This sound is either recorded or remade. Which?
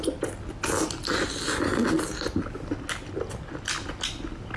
recorded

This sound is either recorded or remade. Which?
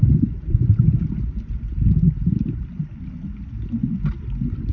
recorded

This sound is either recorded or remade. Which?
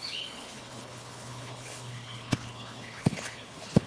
remade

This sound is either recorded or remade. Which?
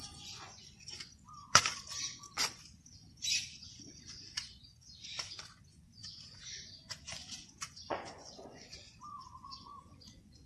remade